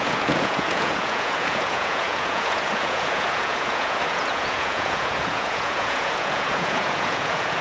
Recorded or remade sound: remade